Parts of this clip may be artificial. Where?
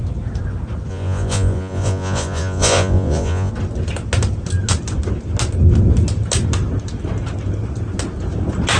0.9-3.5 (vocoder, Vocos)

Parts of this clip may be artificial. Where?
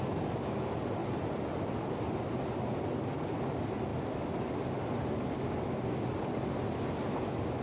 none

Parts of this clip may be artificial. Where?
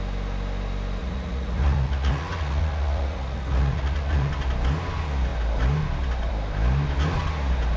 1.0-4.3 (vocoder, Vocos)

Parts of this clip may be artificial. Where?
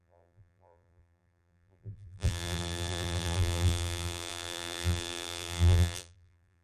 0.0-6.6 (vocoder, BigVGAN v2)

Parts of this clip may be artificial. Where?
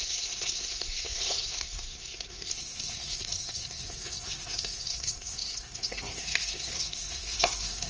0.0-7.9 (codec, SNAC)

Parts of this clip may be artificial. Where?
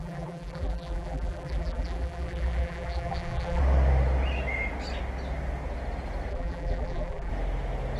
0.0-3.6 (vocoder, BigVGAN v2); 6.3-7.3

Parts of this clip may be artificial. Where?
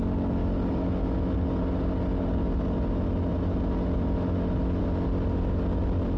none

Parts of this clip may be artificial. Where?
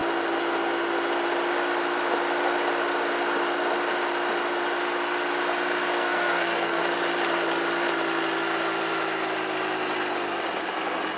5.9-6.8 (codec, SNAC)